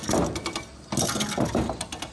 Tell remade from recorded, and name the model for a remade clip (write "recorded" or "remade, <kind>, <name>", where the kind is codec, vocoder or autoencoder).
recorded